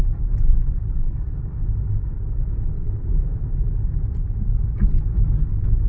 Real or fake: real